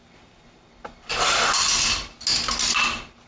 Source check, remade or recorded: recorded